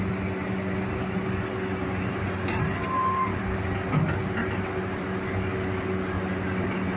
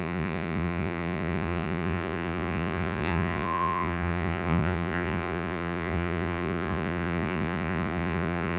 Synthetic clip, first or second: second